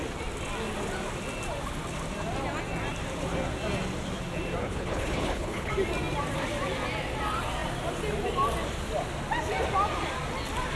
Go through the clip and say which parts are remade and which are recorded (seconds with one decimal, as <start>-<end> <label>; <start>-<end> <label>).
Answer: 0.0-4.6 recorded; 4.6-5.7 remade; 5.7-10.8 recorded

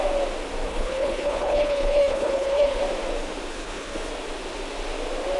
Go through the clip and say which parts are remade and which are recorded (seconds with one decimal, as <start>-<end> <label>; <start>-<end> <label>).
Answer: 0.0-0.7 recorded; 0.7-2.8 remade; 2.8-3.5 recorded; 3.5-4.1 remade; 4.1-5.4 recorded

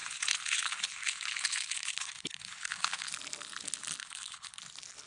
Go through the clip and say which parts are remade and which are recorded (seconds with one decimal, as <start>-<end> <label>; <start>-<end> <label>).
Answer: 0.0-3.1 remade; 3.1-4.0 recorded; 4.0-4.6 remade; 4.6-5.1 recorded

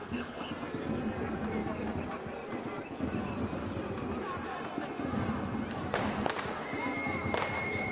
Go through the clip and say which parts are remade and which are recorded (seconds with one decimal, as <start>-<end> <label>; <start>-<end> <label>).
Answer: 0.0-0.5 remade; 0.5-7.9 recorded

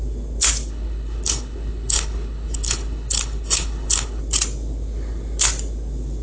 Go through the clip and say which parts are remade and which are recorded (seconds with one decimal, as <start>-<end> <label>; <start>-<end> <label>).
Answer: 0.0-0.7 recorded; 0.7-4.2 remade; 4.2-6.2 recorded